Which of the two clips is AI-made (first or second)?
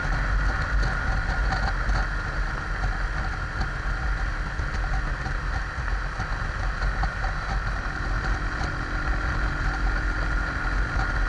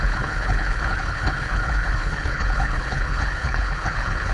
second